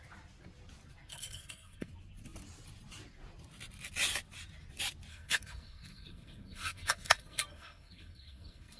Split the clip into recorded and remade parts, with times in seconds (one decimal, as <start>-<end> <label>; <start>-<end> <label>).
0.0-1.1 recorded; 1.1-1.9 remade; 1.9-5.1 recorded; 5.1-8.8 remade